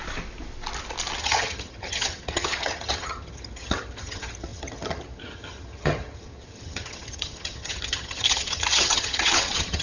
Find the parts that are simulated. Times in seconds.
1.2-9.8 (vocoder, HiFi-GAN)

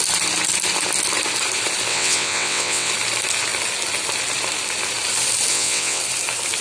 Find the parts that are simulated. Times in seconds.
1.9-2.9 (vocoder, WaveNeXt); 5.5-6.0